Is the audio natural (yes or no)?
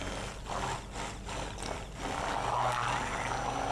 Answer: yes